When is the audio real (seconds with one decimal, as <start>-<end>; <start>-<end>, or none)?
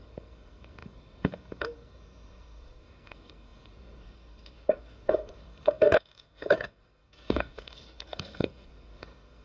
none